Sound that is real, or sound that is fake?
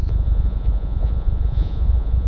fake